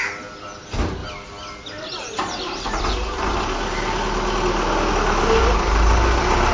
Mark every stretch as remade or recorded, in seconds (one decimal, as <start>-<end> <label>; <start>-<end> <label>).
0.0-6.5 recorded